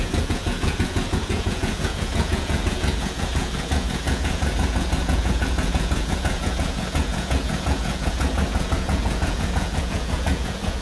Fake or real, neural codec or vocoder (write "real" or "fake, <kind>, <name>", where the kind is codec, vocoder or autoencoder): fake, vocoder, Vocos